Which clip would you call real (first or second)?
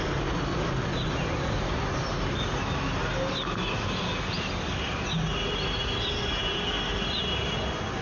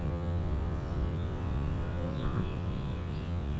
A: first